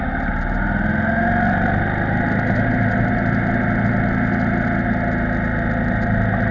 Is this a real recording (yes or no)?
yes